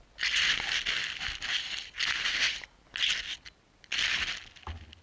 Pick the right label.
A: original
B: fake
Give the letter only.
A